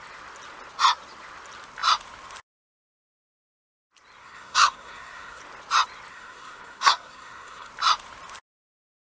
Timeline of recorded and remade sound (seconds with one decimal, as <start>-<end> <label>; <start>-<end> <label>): 0.0-4.2 recorded; 4.2-5.4 remade; 5.4-6.1 recorded; 6.1-7.7 remade; 7.7-9.1 recorded